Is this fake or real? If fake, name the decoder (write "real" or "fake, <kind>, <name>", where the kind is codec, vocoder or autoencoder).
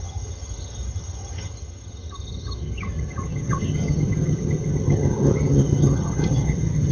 fake, vocoder, HiFi-GAN